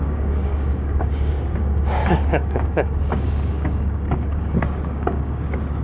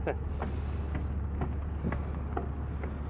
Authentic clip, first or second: second